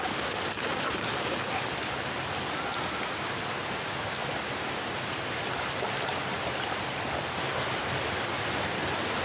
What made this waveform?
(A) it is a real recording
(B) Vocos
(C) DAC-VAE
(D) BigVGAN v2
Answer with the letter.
A